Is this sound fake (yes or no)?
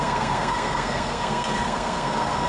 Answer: yes